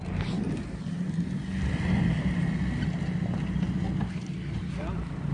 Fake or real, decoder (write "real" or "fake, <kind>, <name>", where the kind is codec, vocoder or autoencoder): real